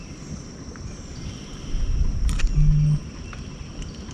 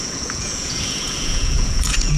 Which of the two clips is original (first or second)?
first